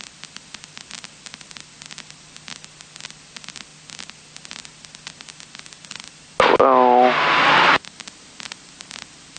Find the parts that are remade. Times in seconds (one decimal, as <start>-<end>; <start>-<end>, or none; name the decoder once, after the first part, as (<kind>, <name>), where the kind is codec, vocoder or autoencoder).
none